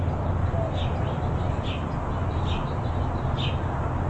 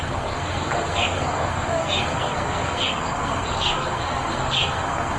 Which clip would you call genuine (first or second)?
first